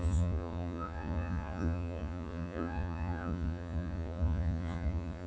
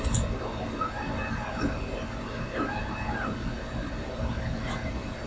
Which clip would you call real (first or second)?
second